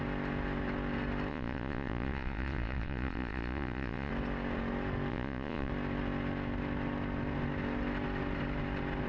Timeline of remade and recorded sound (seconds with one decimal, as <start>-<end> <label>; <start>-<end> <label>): 0.0-1.3 recorded; 1.3-4.1 remade; 4.1-5.1 recorded; 5.1-5.7 remade; 5.7-9.1 recorded